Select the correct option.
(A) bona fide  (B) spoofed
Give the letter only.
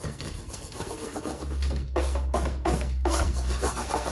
B